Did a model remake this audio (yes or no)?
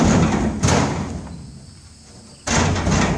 no